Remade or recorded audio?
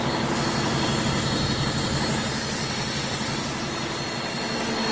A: recorded